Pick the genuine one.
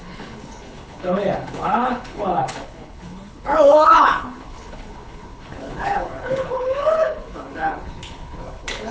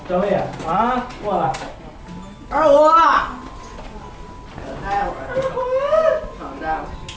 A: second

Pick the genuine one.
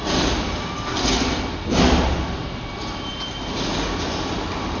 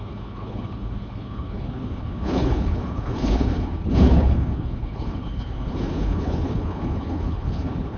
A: first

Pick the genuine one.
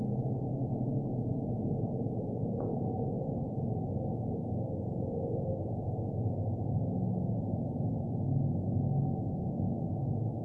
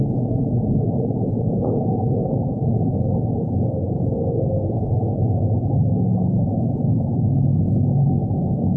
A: first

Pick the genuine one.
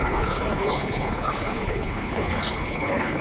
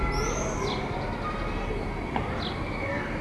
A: second